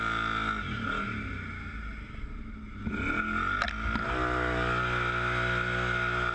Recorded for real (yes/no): yes